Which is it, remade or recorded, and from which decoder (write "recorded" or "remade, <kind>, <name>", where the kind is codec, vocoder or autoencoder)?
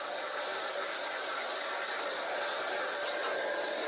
recorded